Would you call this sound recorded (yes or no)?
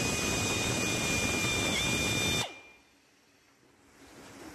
yes